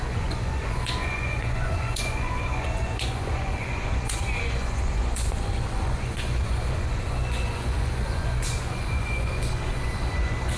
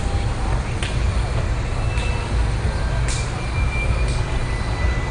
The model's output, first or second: first